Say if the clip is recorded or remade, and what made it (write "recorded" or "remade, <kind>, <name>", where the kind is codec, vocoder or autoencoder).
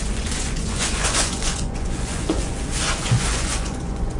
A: remade, vocoder, Vocos